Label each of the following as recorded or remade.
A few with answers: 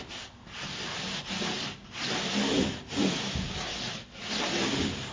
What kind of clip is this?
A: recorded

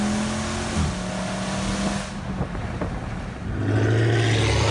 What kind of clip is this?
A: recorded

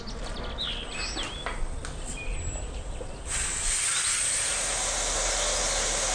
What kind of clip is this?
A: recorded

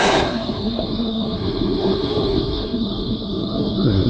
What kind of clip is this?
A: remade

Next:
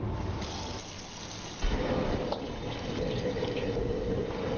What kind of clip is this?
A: recorded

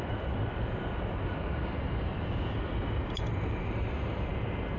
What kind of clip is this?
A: recorded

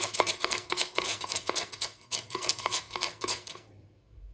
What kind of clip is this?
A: remade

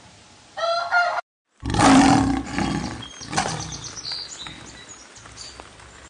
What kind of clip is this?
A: recorded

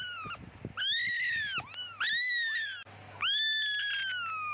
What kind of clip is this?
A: recorded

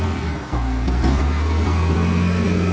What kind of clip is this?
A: remade